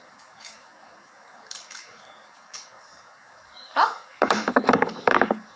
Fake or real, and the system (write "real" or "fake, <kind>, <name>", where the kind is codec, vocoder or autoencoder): fake, codec, DAC